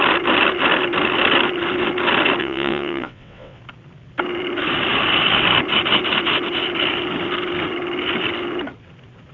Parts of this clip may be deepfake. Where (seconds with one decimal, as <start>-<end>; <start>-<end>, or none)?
2.4-3.6